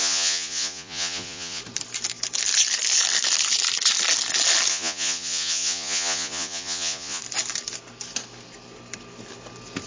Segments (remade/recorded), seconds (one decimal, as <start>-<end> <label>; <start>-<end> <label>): 0.0-1.6 remade; 1.6-4.7 recorded; 4.7-7.2 remade; 7.2-9.9 recorded